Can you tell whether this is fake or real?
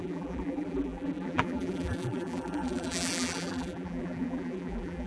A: fake